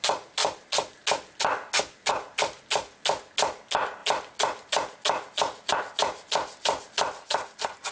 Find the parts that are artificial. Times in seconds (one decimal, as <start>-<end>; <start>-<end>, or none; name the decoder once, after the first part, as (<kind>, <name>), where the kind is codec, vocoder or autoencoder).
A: none